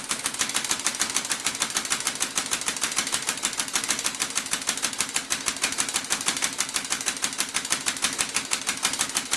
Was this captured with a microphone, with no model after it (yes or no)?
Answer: yes